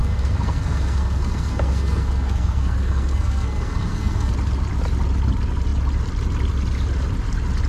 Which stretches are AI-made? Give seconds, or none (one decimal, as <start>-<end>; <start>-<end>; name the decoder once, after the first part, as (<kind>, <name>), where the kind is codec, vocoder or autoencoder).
0.0-4.3 (codec, SNAC)